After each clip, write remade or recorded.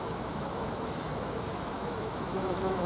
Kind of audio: remade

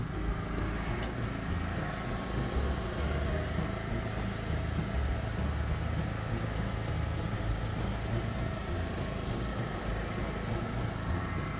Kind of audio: recorded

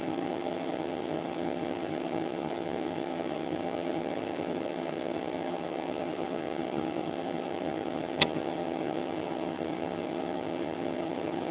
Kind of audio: remade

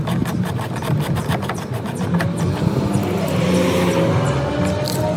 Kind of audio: recorded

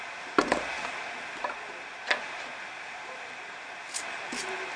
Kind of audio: recorded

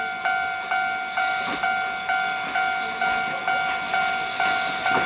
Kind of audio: recorded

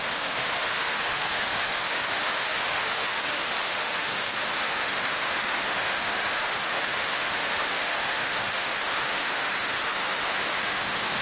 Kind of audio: remade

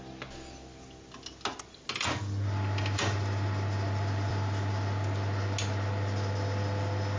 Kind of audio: recorded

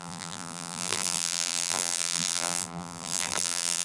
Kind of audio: remade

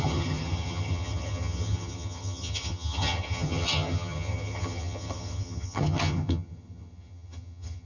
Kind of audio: remade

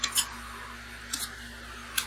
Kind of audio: recorded